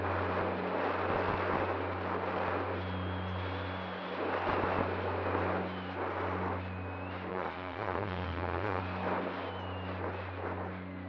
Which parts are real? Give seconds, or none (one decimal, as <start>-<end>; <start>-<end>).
0.0-7.3; 8.8-11.1

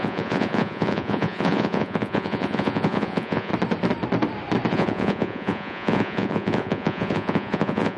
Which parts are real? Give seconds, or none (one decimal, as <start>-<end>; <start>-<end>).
3.5-4.7